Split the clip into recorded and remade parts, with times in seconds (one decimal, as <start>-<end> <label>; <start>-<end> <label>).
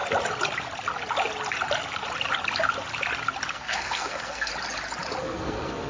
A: 0.0-3.5 recorded; 3.5-4.5 remade; 4.5-5.2 recorded; 5.2-5.9 remade